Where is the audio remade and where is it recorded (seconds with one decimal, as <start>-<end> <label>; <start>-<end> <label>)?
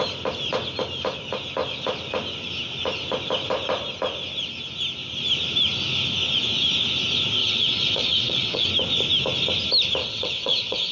0.0-7.4 recorded; 7.4-8.7 remade; 8.7-10.0 recorded; 10.0-10.9 remade